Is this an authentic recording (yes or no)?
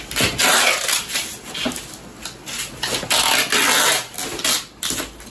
yes